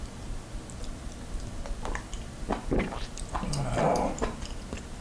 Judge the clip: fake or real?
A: real